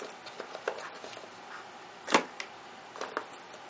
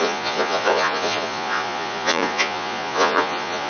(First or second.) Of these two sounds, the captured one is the first